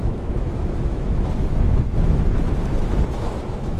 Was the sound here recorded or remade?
remade